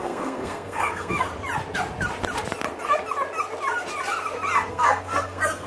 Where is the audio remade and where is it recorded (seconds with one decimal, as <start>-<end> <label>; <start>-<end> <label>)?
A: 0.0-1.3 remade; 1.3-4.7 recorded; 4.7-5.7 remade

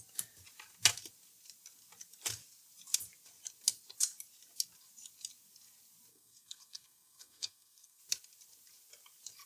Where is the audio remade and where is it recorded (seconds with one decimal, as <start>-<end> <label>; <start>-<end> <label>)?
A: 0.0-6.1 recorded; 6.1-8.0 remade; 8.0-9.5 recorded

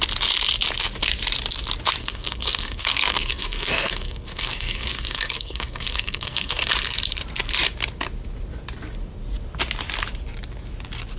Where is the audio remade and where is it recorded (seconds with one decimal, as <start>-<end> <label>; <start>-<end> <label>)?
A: 0.0-2.0 recorded; 2.0-6.6 remade; 6.6-11.2 recorded

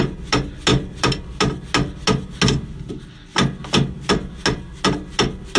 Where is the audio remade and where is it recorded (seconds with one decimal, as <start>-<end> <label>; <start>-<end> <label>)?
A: 0.0-5.6 recorded

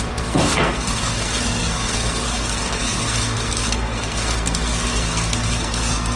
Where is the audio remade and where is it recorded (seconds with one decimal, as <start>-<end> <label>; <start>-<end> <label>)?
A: 0.0-6.2 remade